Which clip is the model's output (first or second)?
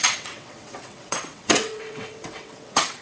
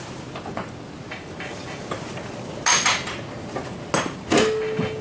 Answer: first